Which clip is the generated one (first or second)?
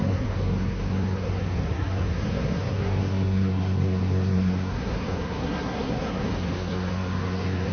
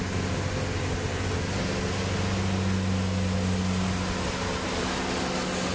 first